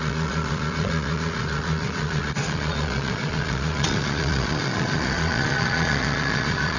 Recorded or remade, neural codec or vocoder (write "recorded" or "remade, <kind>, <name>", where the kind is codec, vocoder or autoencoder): remade, vocoder, Vocos